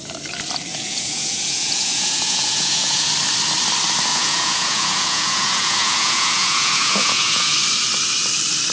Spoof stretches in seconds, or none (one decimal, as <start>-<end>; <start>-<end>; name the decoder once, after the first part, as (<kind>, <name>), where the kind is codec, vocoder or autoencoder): 0.7-3.1 (vocoder, Vocos); 4.1-7.5